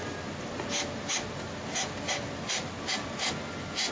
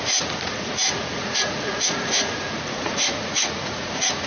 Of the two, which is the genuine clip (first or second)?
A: first